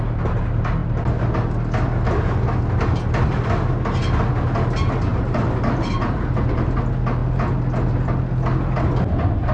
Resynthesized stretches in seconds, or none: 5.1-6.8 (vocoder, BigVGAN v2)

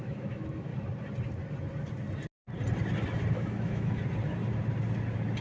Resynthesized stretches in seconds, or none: 0.0-0.7 (autoencoder, DAC-VAE); 3.3-4.0